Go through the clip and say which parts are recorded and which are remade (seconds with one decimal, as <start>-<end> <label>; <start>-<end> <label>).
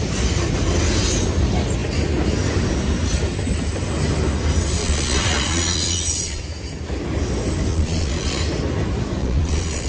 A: 0.0-4.8 recorded; 4.8-6.4 remade; 6.4-7.7 recorded; 7.7-8.4 remade; 8.4-9.2 recorded; 9.2-9.9 remade